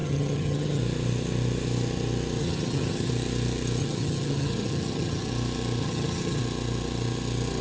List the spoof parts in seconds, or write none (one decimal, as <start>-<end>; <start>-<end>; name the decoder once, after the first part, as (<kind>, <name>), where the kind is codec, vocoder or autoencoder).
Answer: 0.0-0.8 (vocoder, HiFi-GAN); 2.4-3.1; 3.8-5.3; 5.8-6.4